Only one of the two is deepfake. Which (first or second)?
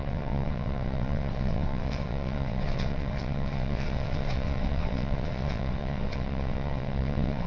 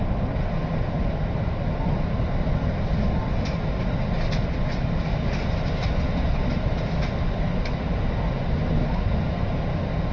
first